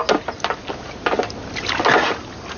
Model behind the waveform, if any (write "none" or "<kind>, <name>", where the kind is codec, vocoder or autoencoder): none